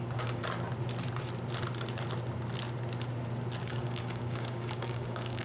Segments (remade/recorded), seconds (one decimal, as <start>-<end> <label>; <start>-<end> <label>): 0.0-0.4 remade; 0.4-3.6 recorded; 3.6-5.4 remade